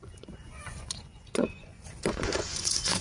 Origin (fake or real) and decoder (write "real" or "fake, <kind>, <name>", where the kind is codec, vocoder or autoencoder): fake, vocoder, Vocos